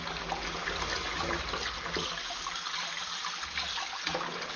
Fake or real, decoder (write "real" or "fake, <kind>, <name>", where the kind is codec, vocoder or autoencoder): real